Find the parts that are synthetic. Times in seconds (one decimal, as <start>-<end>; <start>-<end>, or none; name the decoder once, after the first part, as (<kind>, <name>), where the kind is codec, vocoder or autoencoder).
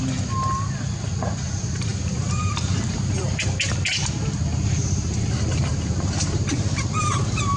1.9-3.2 (vocoder, BigVGAN v2); 4.8-7.6